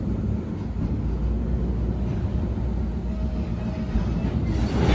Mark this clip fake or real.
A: real